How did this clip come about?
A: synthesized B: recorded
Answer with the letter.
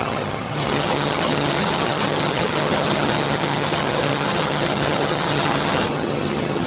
A